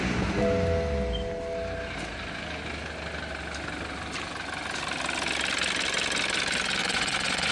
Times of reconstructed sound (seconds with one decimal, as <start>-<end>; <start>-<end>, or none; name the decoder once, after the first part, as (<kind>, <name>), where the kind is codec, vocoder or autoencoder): 6.8-7.5 (vocoder, Vocos)